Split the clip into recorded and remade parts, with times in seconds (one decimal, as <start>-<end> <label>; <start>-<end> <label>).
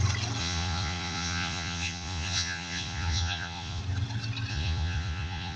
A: 0.0-0.4 recorded; 0.4-3.8 remade; 3.8-4.5 recorded; 4.5-5.6 remade